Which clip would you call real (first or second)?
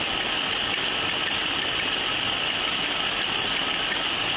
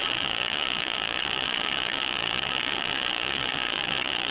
first